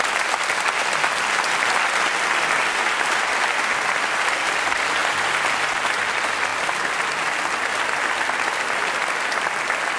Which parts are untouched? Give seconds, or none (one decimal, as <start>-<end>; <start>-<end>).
0.0-10.0